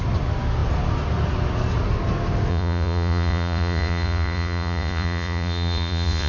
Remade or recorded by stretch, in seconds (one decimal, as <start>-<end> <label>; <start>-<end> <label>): 0.0-2.5 recorded; 2.5-6.3 remade